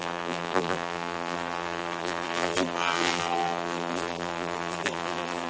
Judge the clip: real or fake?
fake